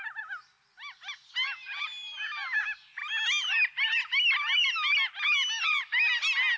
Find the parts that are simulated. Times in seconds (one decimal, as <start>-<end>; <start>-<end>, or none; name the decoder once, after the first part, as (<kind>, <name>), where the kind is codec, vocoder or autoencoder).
none